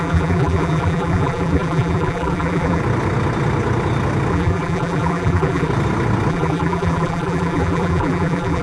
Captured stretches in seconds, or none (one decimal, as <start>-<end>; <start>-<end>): 2.8-4.3; 5.7-6.3